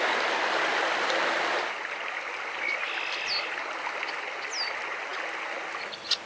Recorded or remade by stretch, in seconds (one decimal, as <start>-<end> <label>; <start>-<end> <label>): 0.0-6.3 recorded